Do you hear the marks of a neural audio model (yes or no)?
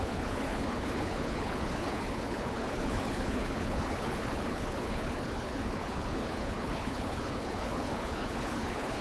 yes